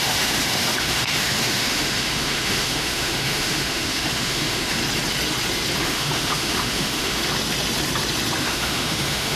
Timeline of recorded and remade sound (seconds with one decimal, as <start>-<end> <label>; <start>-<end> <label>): 0.0-4.8 remade; 4.8-5.8 recorded; 5.8-7.2 remade; 7.2-8.4 recorded; 8.4-9.4 remade